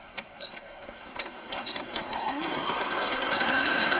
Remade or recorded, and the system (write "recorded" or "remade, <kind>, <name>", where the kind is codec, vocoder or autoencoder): remade, codec, SNAC